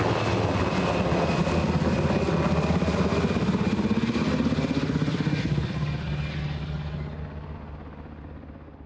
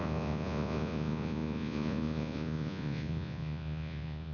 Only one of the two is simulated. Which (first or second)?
second